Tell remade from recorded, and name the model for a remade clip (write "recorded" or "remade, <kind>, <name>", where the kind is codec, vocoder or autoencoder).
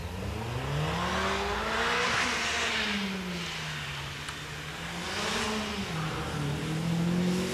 recorded